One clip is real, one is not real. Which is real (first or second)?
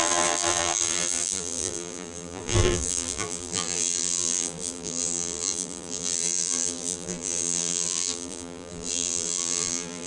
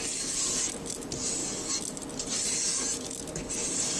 second